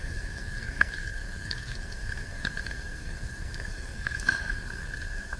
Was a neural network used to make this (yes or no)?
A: yes